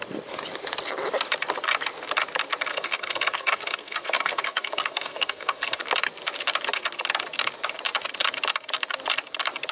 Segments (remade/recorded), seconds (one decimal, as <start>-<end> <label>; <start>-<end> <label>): 0.0-2.7 recorded; 2.7-5.8 remade; 5.8-9.7 recorded